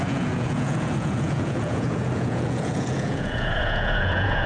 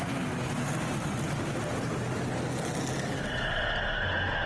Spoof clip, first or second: first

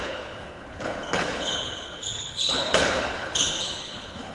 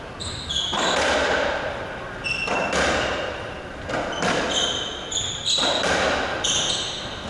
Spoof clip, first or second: first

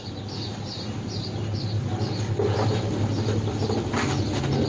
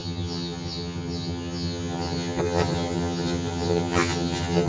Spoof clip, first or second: second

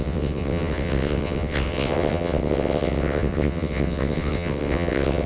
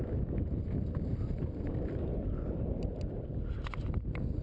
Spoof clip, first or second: first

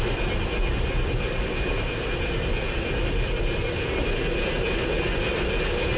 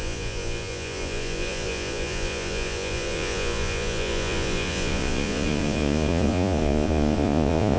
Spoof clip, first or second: second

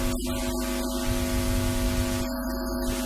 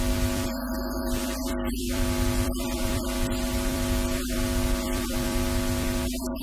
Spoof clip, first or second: second